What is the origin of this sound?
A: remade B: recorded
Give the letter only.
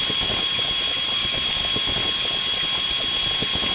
B